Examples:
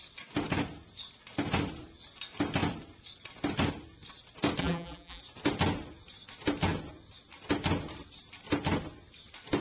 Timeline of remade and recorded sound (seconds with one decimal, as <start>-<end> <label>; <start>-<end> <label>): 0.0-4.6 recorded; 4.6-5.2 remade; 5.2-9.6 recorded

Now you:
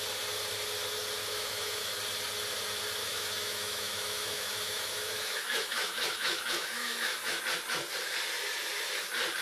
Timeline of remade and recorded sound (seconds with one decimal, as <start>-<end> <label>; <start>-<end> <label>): 0.0-1.2 recorded; 1.2-1.9 remade; 1.9-3.0 recorded; 3.0-7.4 remade; 7.4-9.4 recorded

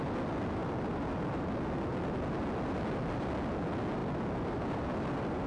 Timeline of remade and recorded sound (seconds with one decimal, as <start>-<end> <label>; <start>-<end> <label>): 0.0-5.5 recorded

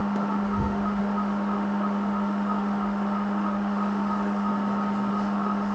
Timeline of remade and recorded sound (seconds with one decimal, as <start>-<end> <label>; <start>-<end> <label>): 0.0-4.5 remade; 4.5-5.1 recorded; 5.1-5.7 remade

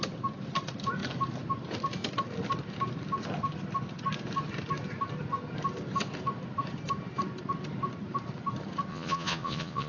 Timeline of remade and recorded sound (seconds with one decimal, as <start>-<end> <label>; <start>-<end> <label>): 0.0-8.9 recorded; 8.9-9.9 remade

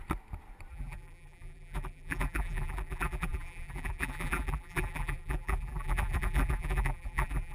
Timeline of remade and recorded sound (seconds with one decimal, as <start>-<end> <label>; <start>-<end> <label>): 0.0-0.7 recorded; 0.7-7.5 remade

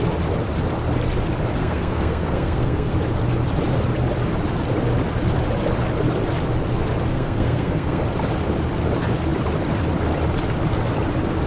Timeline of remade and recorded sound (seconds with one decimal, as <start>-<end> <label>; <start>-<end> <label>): 0.0-1.6 recorded; 1.6-2.9 remade; 2.9-7.1 recorded; 7.1-8.0 remade; 8.0-11.5 recorded

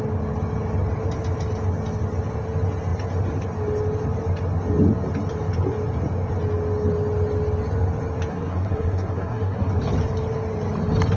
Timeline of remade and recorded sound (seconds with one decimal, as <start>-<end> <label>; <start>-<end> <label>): 0.0-8.3 recorded; 8.3-9.7 remade; 9.7-11.2 recorded